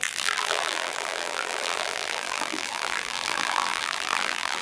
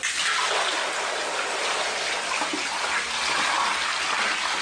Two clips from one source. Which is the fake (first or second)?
first